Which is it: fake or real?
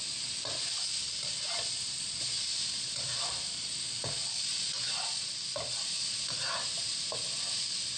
real